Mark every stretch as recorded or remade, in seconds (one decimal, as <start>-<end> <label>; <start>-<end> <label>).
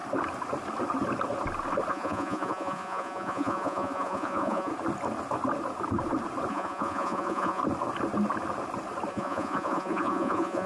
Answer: 0.0-1.9 recorded; 1.9-4.7 remade; 4.7-6.5 recorded; 6.5-7.6 remade; 7.6-9.1 recorded; 9.1-10.7 remade